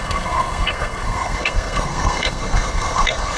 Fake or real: fake